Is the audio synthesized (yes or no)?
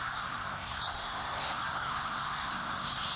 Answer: yes